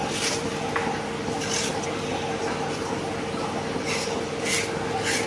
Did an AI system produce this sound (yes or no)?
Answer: no